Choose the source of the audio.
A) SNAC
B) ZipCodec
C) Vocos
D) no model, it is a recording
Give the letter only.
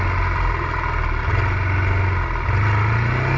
D